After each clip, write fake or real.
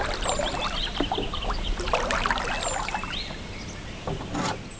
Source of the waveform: real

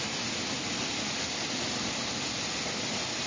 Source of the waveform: real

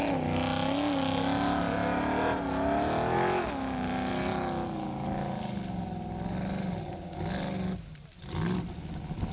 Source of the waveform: real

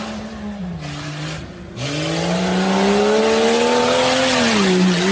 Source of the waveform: real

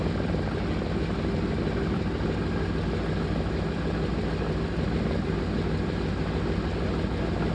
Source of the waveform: real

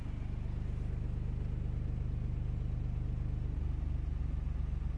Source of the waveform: real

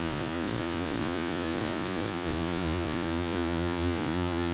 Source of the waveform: fake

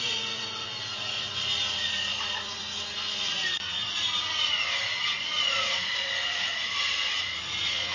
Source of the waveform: fake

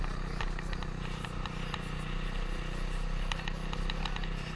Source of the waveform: real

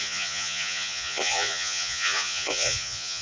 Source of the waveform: fake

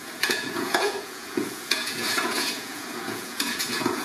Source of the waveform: fake